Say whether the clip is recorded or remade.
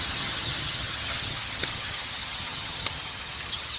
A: remade